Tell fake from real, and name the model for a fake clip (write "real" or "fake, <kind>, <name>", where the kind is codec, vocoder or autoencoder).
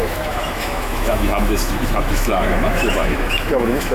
fake, autoencoder, DAC-VAE